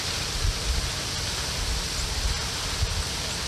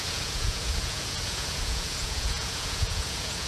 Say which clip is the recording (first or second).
first